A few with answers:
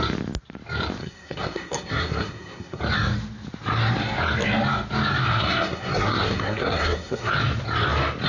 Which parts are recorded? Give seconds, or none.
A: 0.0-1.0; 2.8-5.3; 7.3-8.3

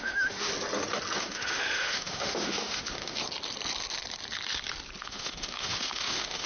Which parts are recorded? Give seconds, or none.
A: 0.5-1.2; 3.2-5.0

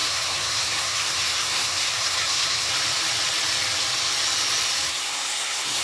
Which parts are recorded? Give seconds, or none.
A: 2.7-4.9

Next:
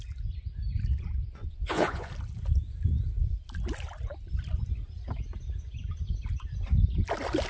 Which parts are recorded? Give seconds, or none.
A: 0.0-1.3; 2.1-7.5